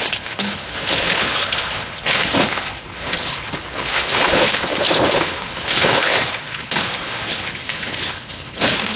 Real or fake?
fake